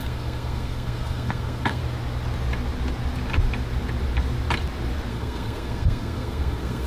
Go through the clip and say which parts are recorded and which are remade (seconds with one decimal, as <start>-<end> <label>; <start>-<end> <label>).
0.0-1.8 remade; 1.8-5.1 recorded; 5.1-6.9 remade